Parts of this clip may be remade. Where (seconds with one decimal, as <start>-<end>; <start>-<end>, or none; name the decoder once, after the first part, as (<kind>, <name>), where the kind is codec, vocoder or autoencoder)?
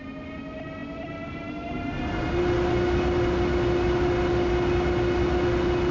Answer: none